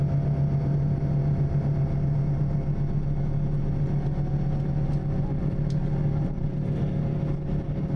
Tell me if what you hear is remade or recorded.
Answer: recorded